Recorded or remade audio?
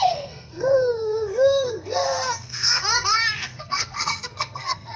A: remade